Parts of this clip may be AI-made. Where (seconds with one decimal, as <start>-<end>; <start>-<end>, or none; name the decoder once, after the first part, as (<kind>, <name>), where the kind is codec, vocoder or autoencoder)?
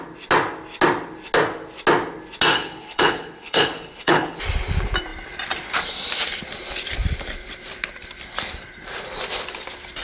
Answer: 2.5-4.4 (codec, HILCodec)